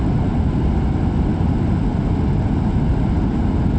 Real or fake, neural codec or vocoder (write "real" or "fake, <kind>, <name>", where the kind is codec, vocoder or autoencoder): real